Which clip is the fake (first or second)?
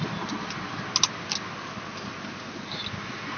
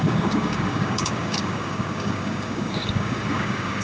second